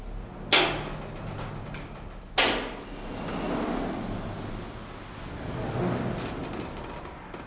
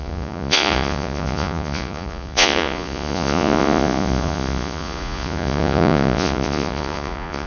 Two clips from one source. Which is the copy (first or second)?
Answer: second